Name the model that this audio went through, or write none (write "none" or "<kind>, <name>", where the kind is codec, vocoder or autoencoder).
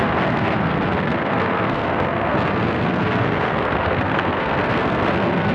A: codec, SNAC